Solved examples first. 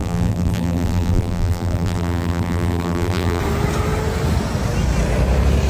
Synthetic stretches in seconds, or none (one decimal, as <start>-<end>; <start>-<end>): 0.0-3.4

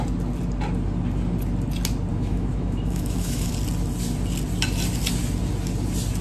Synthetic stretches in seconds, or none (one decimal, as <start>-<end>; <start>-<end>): 2.1-3.5

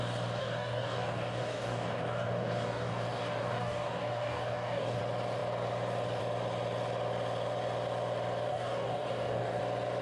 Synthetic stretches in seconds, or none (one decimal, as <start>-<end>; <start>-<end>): 0.4-5.0; 8.5-9.6